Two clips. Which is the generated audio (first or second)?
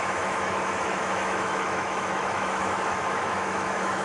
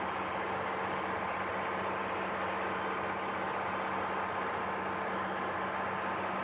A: first